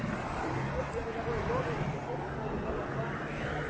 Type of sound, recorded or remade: recorded